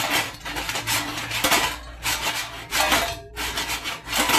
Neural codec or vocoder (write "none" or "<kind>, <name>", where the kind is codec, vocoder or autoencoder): none